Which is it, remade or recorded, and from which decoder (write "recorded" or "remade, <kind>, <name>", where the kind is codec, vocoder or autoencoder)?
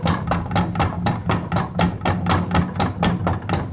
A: recorded